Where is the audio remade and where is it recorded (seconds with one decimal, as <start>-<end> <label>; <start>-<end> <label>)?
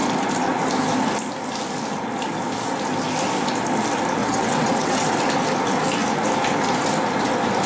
0.0-4.2 recorded; 4.2-5.1 remade; 5.1-7.7 recorded